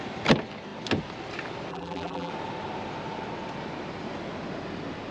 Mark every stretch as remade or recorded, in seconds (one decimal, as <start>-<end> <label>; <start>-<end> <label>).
0.0-1.7 recorded; 1.7-2.3 remade; 2.3-5.1 recorded